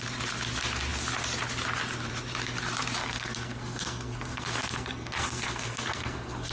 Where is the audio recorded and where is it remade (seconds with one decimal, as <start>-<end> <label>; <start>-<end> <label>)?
0.0-3.0 recorded; 3.0-6.5 remade